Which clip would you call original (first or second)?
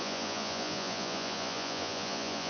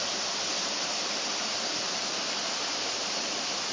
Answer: second